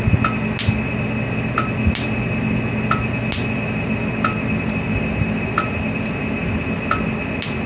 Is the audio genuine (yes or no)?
yes